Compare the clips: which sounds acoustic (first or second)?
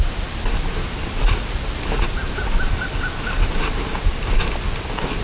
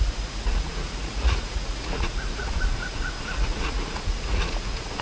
first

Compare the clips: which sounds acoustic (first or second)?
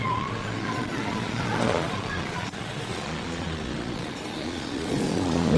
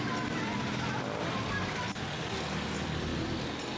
second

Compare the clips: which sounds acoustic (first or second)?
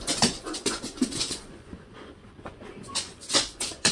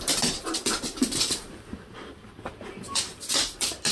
second